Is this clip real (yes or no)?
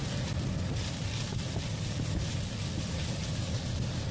yes